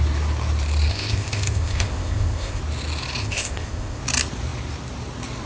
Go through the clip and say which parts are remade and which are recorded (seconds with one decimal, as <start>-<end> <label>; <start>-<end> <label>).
0.0-0.9 recorded; 0.9-2.6 remade; 2.6-3.2 recorded; 3.2-4.0 remade; 4.0-5.5 recorded